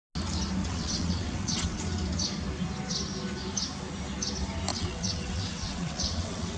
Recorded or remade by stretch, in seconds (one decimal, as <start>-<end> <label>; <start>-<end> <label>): 0.0-0.6 recorded; 0.6-1.8 remade; 1.8-4.7 recorded; 4.7-6.6 remade